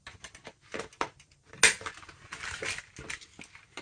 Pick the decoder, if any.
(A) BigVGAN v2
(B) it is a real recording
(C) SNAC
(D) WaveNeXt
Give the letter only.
B